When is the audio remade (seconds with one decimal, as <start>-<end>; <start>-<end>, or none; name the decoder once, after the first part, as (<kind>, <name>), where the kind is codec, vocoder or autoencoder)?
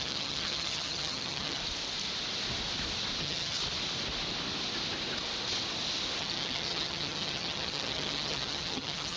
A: 0.0-1.6 (vocoder, HiFi-GAN); 3.2-3.6; 6.2-9.2